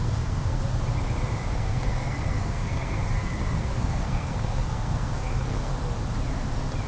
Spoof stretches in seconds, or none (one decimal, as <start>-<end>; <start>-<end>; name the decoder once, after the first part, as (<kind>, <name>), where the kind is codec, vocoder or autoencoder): 0.0-0.6 (codec, SNAC); 1.5-5.7